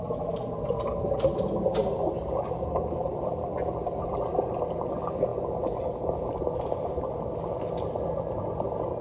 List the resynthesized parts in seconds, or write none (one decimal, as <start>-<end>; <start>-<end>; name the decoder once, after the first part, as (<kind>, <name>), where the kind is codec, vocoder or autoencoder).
none